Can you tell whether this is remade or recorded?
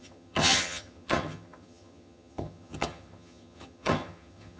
remade